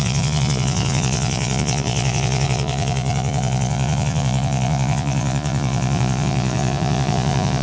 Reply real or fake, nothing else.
fake